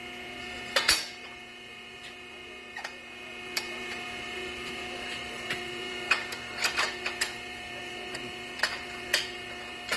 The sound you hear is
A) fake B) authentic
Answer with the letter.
A